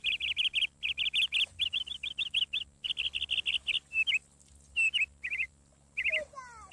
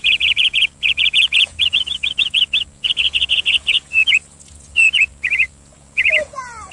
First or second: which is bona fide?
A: first